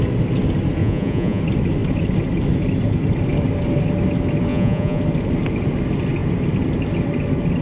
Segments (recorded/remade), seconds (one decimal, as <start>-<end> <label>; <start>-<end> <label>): 0.0-0.8 recorded; 0.8-1.4 remade; 1.4-4.5 recorded; 4.5-5.0 remade; 5.0-7.6 recorded